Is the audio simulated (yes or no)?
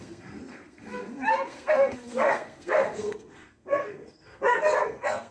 yes